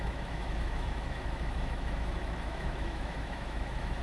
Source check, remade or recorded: remade